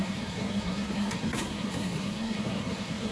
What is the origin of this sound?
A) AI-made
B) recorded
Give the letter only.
A